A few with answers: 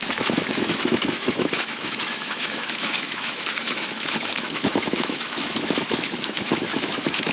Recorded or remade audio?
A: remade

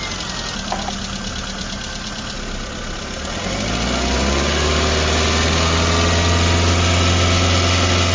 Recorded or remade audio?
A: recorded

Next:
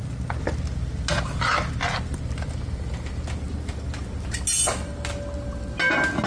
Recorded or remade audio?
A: recorded